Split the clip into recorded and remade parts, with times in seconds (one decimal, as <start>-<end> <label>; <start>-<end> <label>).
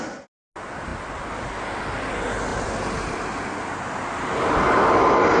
0.0-5.4 recorded